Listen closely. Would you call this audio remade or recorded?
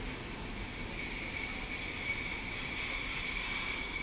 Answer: recorded